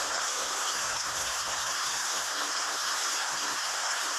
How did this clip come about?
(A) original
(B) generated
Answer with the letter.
B